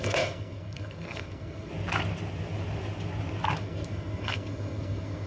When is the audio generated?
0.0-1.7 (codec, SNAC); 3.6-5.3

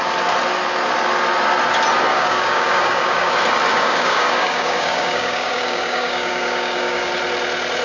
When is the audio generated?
2.1-3.3 (codec, DAC); 3.7-7.1

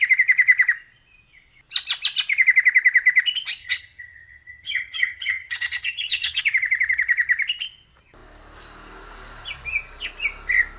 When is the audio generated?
3.6-6.4 (vocoder, HiFi-GAN)

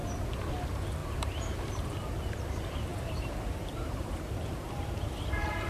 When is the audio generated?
1.0-1.6 (vocoder, BigVGAN v2); 2.9-5.7

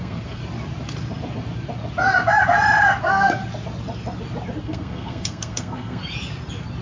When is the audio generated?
0.0-0.4 (codec, SNAC); 3.0-3.4; 4.6-6.0

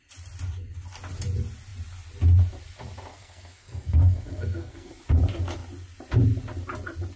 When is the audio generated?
3.1-4.9 (codec, SNAC)